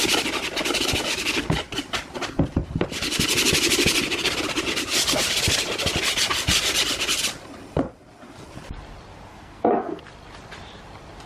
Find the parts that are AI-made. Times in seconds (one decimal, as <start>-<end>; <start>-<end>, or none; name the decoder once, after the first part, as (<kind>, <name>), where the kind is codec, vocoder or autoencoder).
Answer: 9.3-10.0 (codec, SNAC)

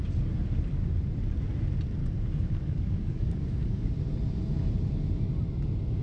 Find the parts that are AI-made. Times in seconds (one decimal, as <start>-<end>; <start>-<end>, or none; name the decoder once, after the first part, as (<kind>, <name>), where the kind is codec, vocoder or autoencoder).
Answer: 2.0-3.9 (codec, DAC)

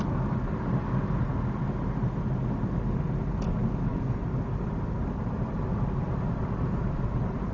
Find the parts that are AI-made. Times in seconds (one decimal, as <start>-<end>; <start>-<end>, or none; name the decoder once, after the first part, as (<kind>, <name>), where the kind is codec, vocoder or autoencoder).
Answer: none

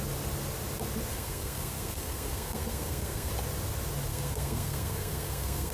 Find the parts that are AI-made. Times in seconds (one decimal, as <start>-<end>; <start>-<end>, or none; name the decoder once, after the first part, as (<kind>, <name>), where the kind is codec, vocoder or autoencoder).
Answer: 1.1-3.3 (codec, SNAC); 4.1-5.7